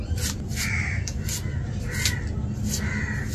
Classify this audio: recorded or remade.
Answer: recorded